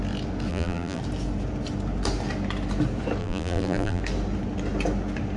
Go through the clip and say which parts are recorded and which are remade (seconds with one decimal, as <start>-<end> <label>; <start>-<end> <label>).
0.0-0.5 recorded; 0.5-1.0 remade; 1.0-3.2 recorded; 3.2-4.0 remade; 4.0-5.4 recorded